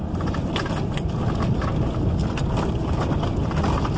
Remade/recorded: recorded